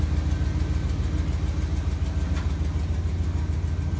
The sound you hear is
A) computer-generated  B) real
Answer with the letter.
B